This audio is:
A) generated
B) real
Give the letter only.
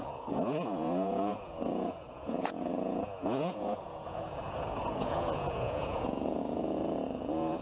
A